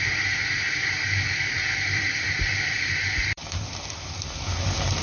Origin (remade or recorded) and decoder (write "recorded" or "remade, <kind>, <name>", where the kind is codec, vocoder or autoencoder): remade, vocoder, BigVGAN v2